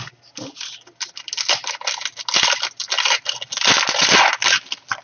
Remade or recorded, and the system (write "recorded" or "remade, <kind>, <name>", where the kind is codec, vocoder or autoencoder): recorded